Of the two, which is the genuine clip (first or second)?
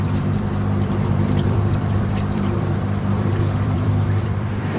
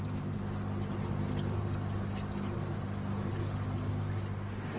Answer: second